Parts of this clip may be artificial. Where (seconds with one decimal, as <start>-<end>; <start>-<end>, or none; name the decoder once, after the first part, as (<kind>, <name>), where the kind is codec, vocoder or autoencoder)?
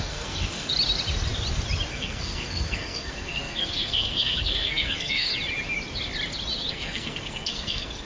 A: 0.0-0.7 (codec, SNAC); 1.9-5.3; 6.7-8.0